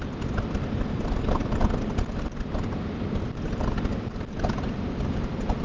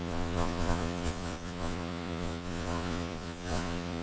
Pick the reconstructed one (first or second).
second